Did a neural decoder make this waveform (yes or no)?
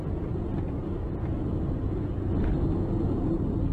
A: no